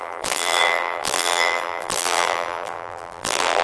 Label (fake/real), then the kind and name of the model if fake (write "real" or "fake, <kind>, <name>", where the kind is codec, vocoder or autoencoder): fake, vocoder, BigVGAN v2